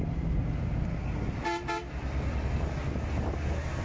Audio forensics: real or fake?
real